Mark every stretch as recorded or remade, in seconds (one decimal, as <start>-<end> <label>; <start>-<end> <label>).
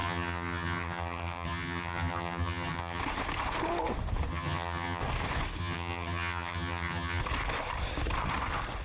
0.0-3.0 remade; 3.0-4.3 recorded; 4.3-5.0 remade; 5.0-5.6 recorded; 5.6-7.2 remade; 7.2-8.8 recorded